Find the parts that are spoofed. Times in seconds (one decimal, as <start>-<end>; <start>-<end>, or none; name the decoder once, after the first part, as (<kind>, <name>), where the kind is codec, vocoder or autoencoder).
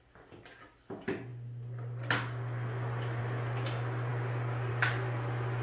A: none